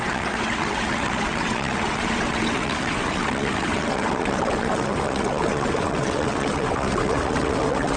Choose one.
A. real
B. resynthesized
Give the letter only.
B